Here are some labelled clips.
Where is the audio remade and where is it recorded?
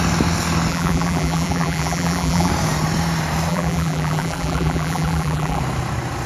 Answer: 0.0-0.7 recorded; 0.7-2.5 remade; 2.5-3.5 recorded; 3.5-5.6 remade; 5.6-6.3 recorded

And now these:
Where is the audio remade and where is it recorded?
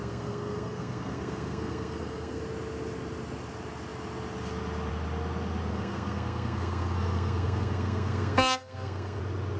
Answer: 0.0-2.4 remade; 2.4-5.7 recorded; 5.7-9.2 remade; 9.2-9.6 recorded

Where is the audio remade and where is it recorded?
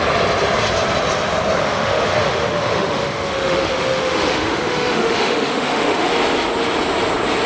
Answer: 0.0-1.6 recorded; 1.6-6.1 remade; 6.1-7.5 recorded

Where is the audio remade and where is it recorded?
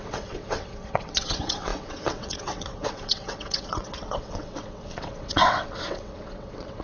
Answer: 0.0-6.8 remade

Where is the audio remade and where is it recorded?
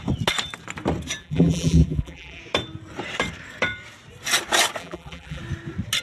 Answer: 0.0-1.2 recorded; 1.2-2.4 remade; 2.4-4.8 recorded; 4.8-5.4 remade; 5.4-6.0 recorded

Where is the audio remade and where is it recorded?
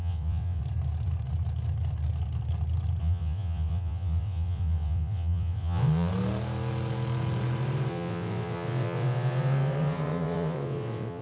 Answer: 0.0-0.6 remade; 0.6-3.0 recorded; 3.0-6.1 remade; 6.1-7.9 recorded; 7.9-11.2 remade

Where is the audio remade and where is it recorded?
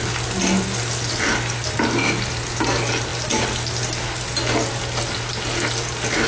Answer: 0.0-6.3 recorded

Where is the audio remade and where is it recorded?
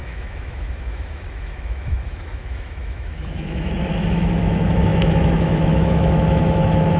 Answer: 0.0-7.0 remade